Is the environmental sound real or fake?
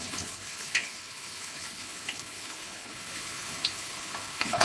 fake